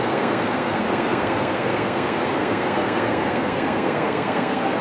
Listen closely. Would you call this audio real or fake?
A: fake